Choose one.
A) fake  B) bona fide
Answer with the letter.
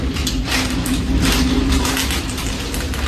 B